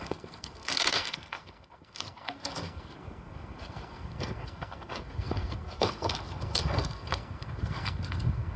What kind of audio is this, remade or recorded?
remade